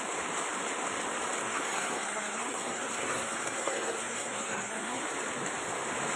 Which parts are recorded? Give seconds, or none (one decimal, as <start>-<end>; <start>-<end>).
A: 0.0-1.4; 5.0-6.2